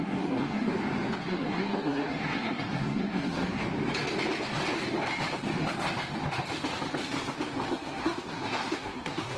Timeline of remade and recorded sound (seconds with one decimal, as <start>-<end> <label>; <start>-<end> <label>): 0.0-0.7 remade; 0.7-1.2 recorded; 1.2-3.6 remade; 3.6-7.7 recorded; 7.7-9.4 remade